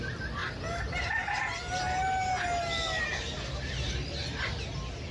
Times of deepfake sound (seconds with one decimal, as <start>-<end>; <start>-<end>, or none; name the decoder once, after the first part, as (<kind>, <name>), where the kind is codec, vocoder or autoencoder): none